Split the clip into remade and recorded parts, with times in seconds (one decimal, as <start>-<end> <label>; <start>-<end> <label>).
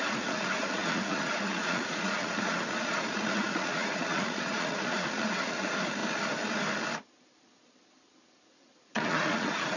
0.0-6.0 remade; 6.0-8.4 recorded; 8.4-9.8 remade